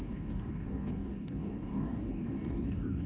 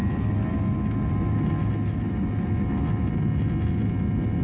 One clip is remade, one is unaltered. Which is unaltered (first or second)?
second